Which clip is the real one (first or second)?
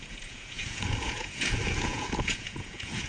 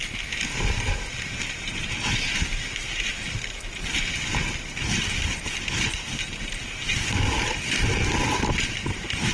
second